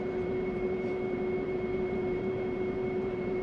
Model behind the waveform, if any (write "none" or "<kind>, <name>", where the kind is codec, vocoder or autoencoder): vocoder, BigVGAN v2